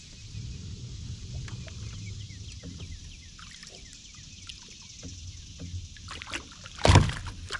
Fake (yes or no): no